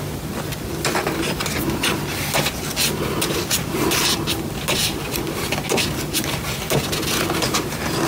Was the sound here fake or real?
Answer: fake